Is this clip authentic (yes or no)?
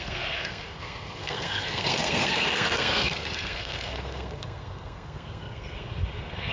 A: no